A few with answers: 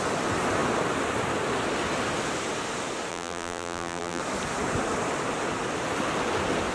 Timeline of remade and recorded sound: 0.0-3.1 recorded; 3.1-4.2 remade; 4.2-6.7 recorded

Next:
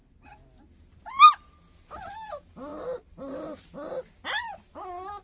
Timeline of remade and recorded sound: 0.0-5.2 recorded

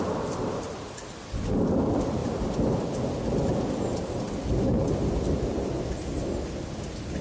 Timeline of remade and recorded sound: 0.0-7.2 recorded